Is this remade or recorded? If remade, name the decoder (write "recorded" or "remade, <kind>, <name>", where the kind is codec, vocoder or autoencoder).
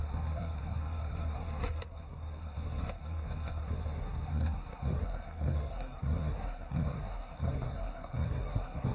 remade, codec, SNAC